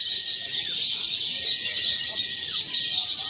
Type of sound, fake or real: fake